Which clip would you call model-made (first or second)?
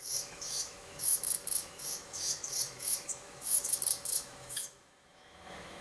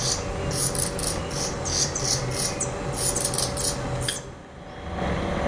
first